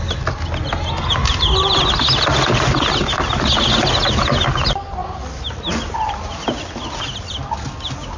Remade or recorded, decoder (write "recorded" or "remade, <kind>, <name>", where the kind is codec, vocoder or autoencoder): recorded